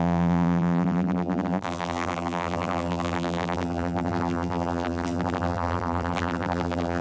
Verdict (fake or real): fake